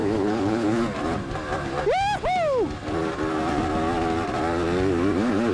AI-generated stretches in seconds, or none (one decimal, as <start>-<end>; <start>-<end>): 0.0-0.8